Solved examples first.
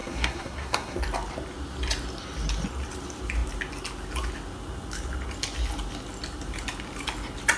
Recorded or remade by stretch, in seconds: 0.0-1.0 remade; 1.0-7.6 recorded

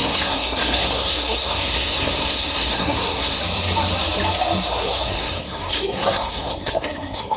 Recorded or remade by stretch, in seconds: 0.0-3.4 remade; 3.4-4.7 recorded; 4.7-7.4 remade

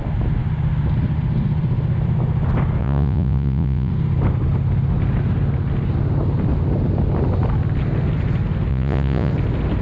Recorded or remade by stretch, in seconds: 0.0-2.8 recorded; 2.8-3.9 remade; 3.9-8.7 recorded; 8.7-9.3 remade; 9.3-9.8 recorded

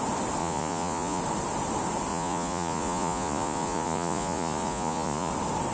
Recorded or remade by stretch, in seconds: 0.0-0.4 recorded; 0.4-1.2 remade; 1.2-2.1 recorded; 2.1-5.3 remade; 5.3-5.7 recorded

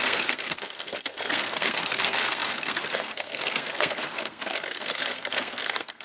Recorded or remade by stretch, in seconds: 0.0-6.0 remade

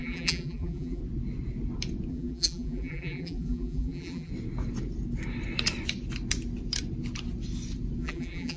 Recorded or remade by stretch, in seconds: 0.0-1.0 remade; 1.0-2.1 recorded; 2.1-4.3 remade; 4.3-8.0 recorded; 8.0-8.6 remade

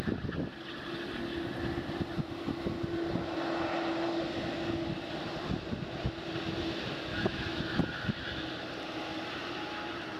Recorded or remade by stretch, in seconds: 0.0-7.1 recorded; 7.1-7.6 remade; 7.6-10.2 recorded

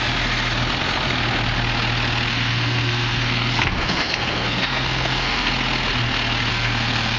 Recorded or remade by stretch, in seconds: 0.0-2.3 recorded; 2.3-5.5 remade; 5.5-6.5 recorded; 6.5-7.2 remade